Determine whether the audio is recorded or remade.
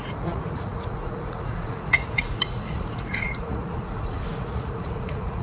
remade